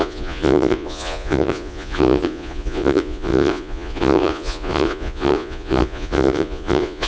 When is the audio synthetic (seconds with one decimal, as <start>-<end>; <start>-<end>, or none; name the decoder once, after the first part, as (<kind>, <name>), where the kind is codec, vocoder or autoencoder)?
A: 0.0-7.1 (vocoder, Vocos)